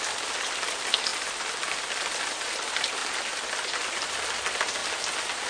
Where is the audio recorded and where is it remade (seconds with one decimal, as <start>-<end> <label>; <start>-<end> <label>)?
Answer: 0.0-5.5 recorded